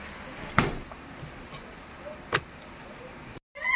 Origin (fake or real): real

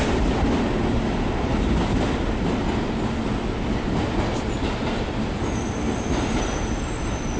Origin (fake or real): real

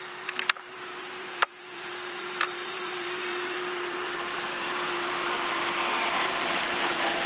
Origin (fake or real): fake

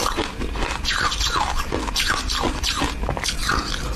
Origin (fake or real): real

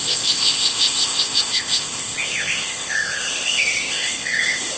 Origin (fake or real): fake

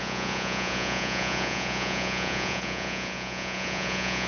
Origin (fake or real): fake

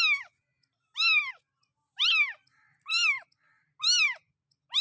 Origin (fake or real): real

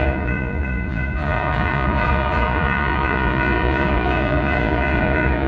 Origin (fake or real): fake